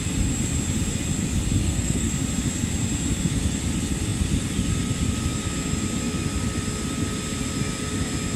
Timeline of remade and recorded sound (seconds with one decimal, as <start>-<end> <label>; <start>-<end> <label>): 0.0-1.6 recorded; 1.6-2.1 remade; 2.1-8.4 recorded